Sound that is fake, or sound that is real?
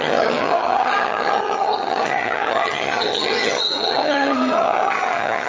fake